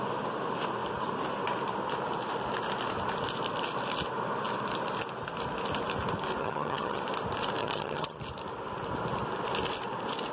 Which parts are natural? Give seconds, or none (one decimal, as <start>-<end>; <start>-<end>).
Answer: 0.0-6.4; 7.0-7.6; 8.2-10.3